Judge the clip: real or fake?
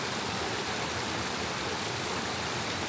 real